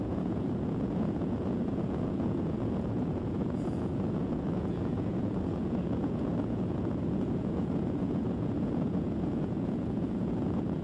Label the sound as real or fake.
fake